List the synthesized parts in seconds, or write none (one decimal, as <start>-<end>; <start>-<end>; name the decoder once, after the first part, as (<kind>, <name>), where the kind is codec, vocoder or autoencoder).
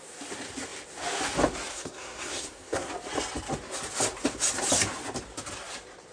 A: 1.7-2.9 (codec, SNAC)